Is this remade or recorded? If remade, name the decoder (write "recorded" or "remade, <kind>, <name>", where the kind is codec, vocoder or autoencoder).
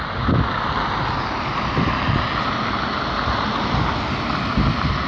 recorded